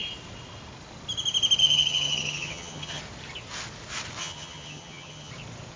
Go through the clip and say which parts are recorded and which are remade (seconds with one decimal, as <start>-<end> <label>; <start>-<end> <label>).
0.0-1.6 recorded; 1.6-3.0 remade; 3.0-4.2 recorded; 4.2-5.3 remade; 5.3-5.8 recorded